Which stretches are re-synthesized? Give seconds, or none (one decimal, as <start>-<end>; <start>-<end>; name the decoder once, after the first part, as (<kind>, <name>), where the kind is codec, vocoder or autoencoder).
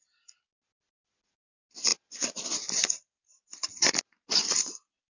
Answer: none